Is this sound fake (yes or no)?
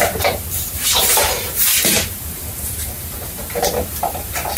yes